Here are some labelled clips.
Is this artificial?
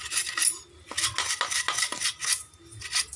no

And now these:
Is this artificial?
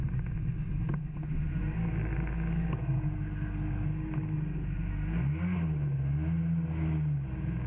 no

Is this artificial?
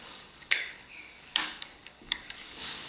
yes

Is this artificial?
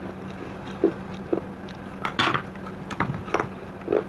no